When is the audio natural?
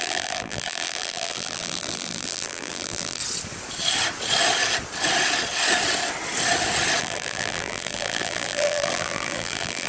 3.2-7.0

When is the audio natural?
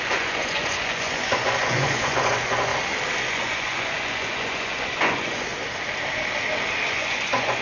2.7-3.3; 5.5-6.9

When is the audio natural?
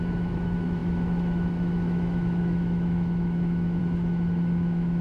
none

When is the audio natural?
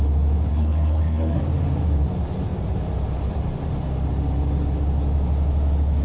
0.0-0.5; 1.4-6.0